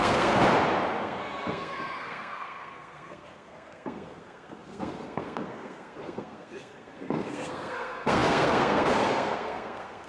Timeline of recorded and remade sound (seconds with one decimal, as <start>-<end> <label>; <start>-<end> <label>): 0.0-0.4 remade; 0.4-1.0 recorded; 1.0-10.1 remade